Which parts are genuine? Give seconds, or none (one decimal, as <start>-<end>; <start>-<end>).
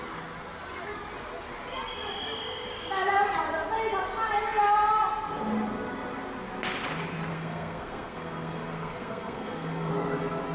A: 0.0-7.3; 9.9-10.5